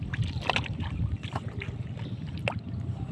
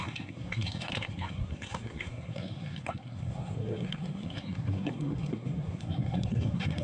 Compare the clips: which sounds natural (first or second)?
first